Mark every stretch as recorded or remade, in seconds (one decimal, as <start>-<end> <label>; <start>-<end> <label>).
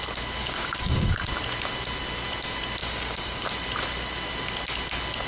0.0-0.4 recorded; 0.4-1.2 remade; 1.2-2.8 recorded; 2.8-3.5 remade; 3.5-5.3 recorded